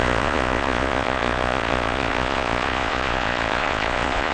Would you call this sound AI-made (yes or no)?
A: yes